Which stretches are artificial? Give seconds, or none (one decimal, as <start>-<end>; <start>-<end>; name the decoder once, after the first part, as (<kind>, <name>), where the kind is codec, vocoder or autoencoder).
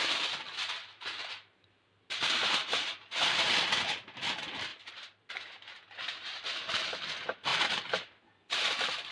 0.8-3.5 (vocoder, BigVGAN v2); 4.7-5.3; 7.5-8.7